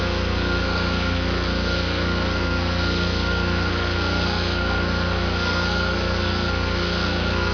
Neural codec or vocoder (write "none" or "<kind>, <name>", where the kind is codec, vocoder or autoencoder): codec, SNAC